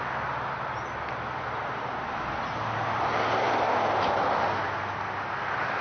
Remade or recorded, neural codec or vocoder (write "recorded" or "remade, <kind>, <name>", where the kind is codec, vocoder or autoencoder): recorded